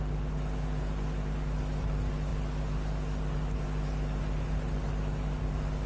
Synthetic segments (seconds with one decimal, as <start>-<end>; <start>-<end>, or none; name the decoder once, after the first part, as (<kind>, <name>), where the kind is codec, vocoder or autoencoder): none